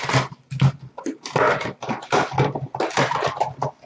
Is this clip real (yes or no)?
yes